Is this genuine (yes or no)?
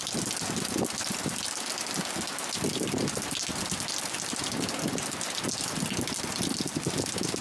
yes